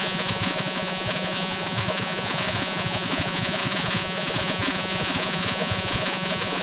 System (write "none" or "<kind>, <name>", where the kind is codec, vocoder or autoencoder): vocoder, Vocos